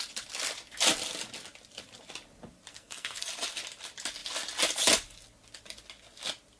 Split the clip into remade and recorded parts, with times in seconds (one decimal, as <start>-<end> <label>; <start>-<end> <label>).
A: 0.0-2.7 recorded; 2.7-3.3 remade; 3.3-6.6 recorded